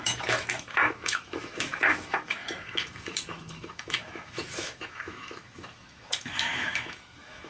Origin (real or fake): fake